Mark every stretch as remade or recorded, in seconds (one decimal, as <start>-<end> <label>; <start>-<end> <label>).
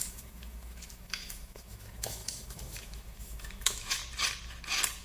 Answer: 0.0-4.0 remade; 4.0-5.0 recorded